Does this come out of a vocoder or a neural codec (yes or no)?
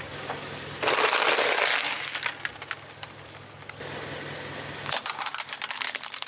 no